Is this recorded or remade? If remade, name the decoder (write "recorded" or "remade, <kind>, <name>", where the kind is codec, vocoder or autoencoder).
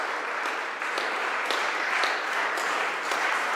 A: recorded